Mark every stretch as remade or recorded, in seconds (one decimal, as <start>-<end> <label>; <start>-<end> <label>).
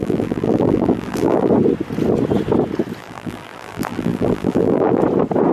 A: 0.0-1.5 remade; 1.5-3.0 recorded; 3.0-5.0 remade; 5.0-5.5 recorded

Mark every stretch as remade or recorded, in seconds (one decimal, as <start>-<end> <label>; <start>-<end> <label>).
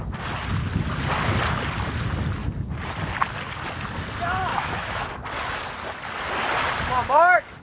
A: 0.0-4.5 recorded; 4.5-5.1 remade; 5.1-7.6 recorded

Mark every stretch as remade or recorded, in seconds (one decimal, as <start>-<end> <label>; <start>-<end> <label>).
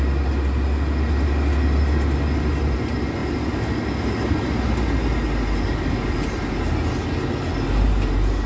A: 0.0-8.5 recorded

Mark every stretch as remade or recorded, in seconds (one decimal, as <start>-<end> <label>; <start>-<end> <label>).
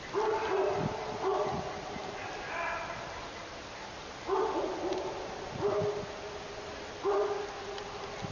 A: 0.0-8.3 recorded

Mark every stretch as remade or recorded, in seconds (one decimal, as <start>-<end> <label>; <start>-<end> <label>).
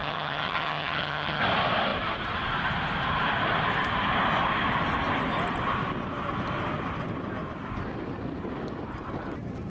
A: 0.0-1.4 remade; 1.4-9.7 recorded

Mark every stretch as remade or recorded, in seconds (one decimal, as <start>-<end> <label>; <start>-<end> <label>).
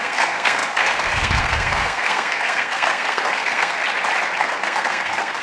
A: 0.0-3.8 remade; 3.8-4.4 recorded; 4.4-5.4 remade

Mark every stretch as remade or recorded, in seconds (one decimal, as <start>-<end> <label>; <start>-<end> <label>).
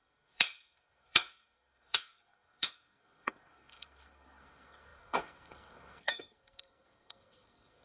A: 0.0-7.8 remade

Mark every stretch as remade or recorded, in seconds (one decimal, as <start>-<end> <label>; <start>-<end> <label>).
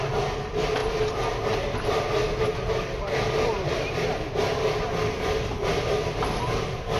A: 0.0-7.0 recorded